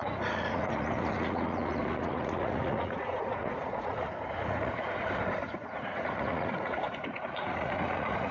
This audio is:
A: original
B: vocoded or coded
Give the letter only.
B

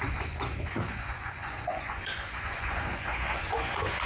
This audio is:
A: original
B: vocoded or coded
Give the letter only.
B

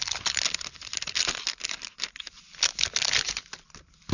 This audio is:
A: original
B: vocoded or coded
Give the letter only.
A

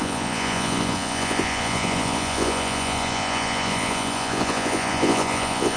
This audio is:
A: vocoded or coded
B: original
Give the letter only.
A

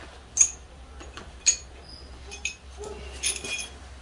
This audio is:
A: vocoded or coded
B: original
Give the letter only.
B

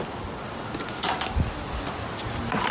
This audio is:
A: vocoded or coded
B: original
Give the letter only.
B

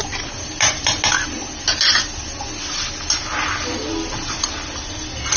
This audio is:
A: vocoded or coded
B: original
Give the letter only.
B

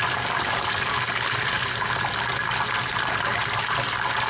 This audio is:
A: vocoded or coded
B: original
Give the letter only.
B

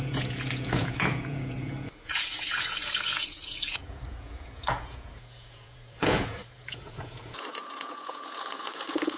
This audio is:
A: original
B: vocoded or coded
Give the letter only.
B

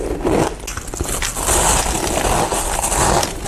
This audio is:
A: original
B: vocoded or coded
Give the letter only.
A